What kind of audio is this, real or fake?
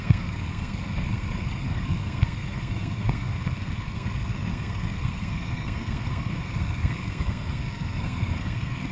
fake